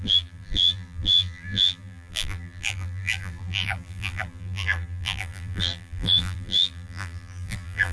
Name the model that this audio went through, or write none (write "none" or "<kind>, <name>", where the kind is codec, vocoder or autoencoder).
vocoder, BigVGAN v2